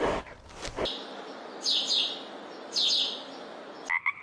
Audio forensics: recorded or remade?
recorded